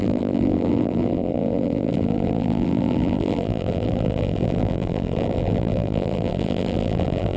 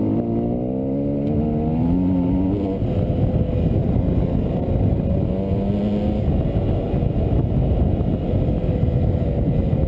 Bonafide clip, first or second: second